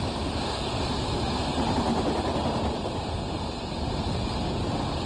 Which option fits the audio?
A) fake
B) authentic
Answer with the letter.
B